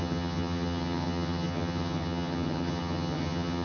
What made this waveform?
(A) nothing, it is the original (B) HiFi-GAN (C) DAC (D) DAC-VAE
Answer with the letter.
B